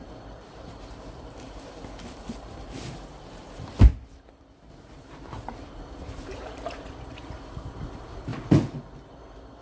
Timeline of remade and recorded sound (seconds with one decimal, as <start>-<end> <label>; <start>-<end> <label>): 0.0-3.9 remade; 3.9-4.7 recorded; 4.7-8.3 remade; 8.3-9.6 recorded